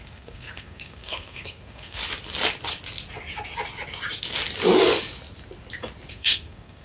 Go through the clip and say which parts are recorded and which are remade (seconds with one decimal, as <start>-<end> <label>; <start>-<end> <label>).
0.0-2.0 remade; 2.0-6.1 recorded; 6.1-6.8 remade